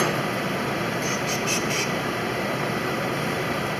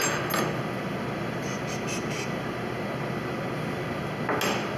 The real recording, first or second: second